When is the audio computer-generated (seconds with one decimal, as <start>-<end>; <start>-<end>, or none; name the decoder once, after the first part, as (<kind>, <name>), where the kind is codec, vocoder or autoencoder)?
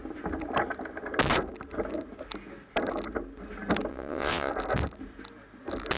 3.9-4.5 (vocoder, WaveNeXt)